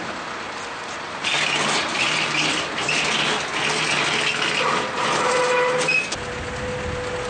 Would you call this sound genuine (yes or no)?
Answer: yes